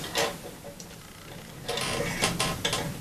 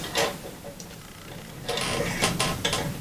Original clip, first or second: first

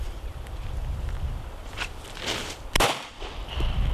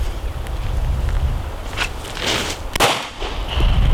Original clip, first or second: second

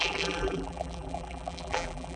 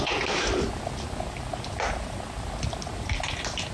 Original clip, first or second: second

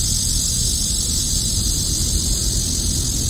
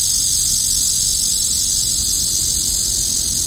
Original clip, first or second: second